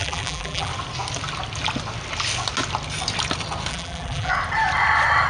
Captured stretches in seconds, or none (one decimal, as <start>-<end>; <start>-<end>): 0.7-3.7; 4.3-5.3